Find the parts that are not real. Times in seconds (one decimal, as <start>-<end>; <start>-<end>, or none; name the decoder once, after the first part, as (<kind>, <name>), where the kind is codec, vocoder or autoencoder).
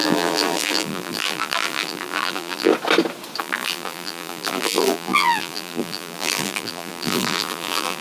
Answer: 0.0-2.7 (vocoder, BigVGAN v2); 3.4-8.0